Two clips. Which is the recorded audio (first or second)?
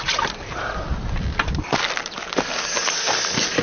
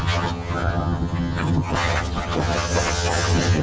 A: first